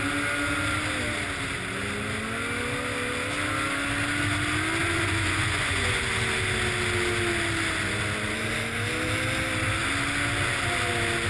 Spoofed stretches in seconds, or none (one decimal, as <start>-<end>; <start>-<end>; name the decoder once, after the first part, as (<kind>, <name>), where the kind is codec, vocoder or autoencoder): 4.8-6.0 (vocoder, Vocos)